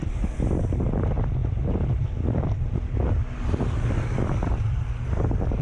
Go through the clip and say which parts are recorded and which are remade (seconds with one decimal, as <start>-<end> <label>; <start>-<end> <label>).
0.0-5.6 recorded